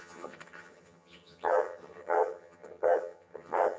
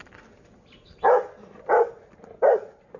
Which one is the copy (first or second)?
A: first